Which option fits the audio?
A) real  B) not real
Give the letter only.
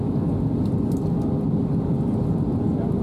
A